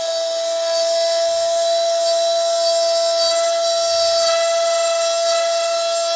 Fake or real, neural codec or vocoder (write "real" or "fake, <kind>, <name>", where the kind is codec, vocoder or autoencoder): real